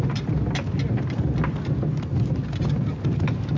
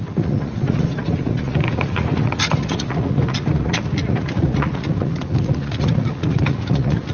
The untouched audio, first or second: first